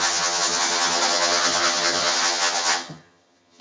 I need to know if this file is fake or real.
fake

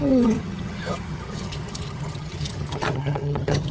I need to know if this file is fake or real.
fake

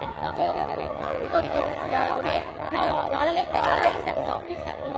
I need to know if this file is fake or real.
fake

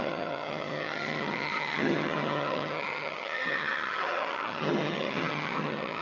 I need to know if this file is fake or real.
fake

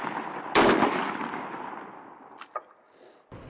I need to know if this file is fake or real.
real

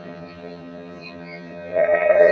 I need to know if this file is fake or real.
fake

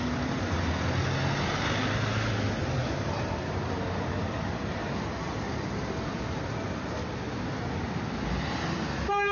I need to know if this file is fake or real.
real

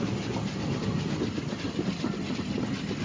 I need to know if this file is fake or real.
real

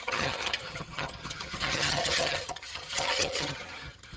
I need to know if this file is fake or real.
fake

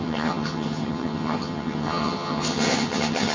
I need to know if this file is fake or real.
fake